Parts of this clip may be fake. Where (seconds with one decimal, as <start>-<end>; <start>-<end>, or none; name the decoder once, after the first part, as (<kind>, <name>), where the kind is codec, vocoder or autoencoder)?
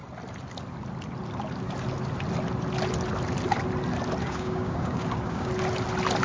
4.2-5.5 (codec, DAC)